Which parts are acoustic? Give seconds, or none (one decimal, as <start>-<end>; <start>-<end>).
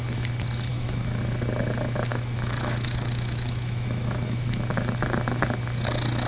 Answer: 0.0-0.7; 1.2-2.1; 4.5-6.3